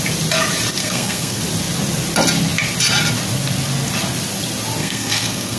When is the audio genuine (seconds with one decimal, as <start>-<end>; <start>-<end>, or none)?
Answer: 0.0-0.8; 1.4-4.8